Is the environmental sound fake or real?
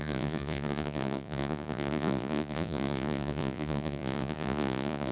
fake